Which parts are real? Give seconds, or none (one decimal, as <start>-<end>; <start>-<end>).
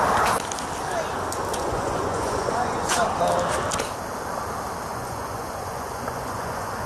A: 0.0-1.5; 3.1-4.9